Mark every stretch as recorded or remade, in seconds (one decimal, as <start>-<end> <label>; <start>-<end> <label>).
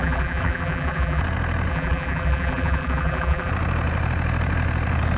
0.0-1.2 remade; 1.2-1.7 recorded; 1.7-3.5 remade; 3.5-5.2 recorded